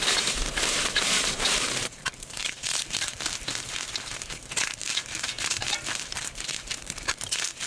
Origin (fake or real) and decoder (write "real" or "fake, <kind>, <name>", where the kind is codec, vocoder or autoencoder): fake, vocoder, BigVGAN v2